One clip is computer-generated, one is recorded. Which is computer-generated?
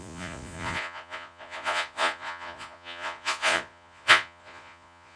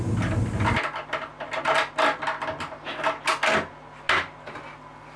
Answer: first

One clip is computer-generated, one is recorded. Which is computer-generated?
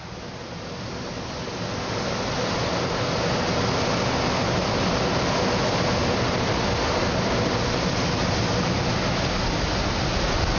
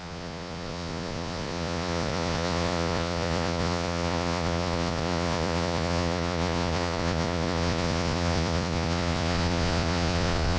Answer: second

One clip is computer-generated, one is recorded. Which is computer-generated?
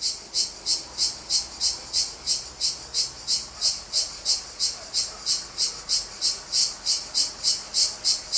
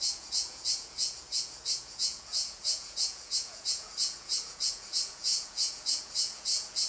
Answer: second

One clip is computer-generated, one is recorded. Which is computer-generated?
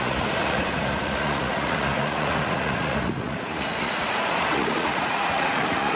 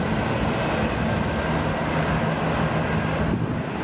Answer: first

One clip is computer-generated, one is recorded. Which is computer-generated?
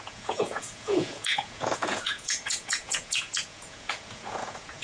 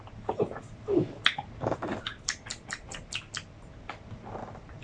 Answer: first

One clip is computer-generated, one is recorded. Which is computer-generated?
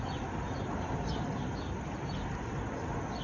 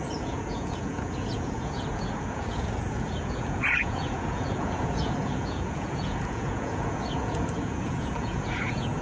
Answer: second